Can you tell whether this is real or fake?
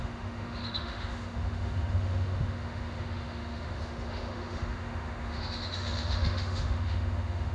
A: fake